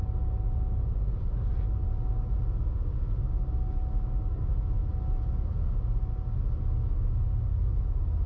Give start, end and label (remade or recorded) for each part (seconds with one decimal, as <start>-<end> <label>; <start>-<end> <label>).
0.0-8.3 recorded